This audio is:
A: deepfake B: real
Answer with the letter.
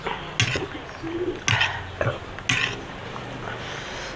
B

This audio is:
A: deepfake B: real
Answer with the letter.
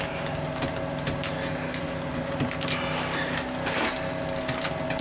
B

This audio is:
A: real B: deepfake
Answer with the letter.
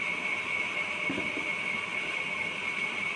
A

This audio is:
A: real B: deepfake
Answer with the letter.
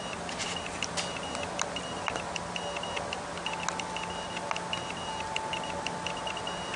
A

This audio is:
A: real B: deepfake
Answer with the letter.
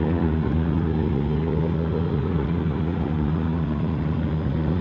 B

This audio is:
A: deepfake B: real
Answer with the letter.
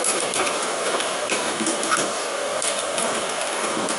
A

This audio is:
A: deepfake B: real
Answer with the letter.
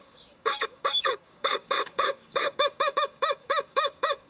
A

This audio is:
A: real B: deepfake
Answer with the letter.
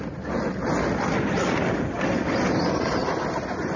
A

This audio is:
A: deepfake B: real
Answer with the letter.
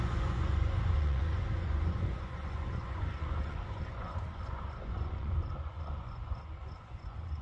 A